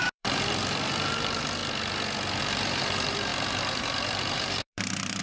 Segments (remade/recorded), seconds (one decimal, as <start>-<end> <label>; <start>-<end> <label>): 0.0-1.6 remade; 1.6-2.4 recorded; 2.4-5.2 remade